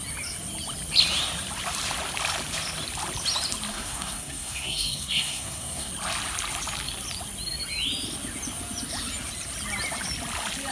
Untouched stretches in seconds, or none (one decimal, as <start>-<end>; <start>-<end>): 0.0-3.7; 5.9-10.7